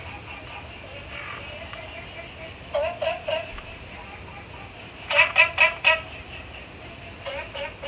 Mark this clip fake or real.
real